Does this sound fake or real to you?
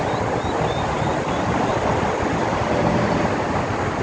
real